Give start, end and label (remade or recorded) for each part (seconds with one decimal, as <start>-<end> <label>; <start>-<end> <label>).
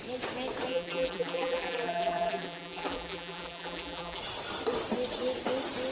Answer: 0.0-0.7 recorded; 0.7-4.2 remade; 4.2-5.9 recorded